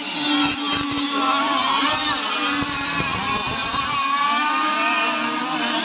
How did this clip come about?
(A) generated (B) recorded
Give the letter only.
B